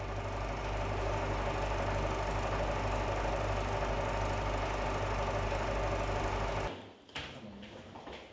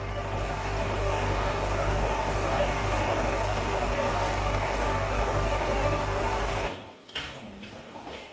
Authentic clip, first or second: first